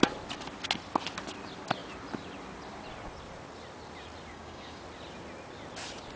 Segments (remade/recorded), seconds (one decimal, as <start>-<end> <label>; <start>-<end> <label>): 0.0-4.3 recorded; 4.3-4.8 remade; 4.8-6.2 recorded